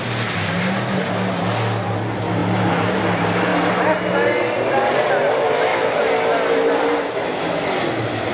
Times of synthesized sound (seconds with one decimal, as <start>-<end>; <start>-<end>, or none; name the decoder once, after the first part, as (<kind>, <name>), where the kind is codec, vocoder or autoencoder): 5.7-7.1 (vocoder, BigVGAN v2)